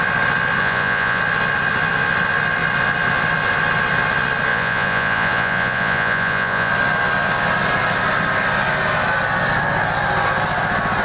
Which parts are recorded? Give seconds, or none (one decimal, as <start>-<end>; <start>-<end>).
0.0-0.6; 1.2-4.5; 6.7-11.0